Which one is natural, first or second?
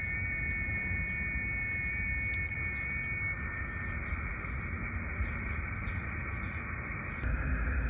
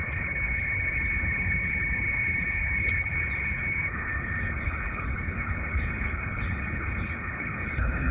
first